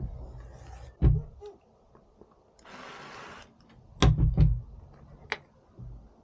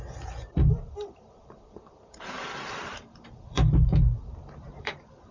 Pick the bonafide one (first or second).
first